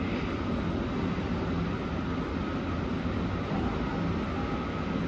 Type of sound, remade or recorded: recorded